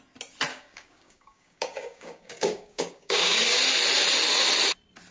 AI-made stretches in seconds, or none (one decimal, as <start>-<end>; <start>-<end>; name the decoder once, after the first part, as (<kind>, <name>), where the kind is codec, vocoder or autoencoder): 0.5-3.6 (codec, DAC)